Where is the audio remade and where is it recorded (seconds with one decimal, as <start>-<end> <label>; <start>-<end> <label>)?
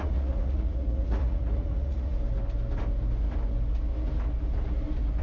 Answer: 0.0-2.1 remade; 2.1-5.2 recorded